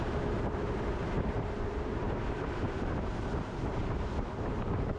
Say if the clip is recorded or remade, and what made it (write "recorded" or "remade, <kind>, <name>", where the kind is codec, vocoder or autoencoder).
remade, vocoder, BigVGAN v2